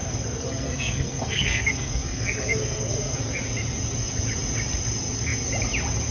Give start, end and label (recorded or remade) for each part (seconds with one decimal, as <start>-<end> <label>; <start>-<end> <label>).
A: 0.0-3.2 remade; 3.2-6.1 recorded